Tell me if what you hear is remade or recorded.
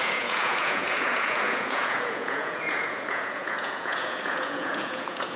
remade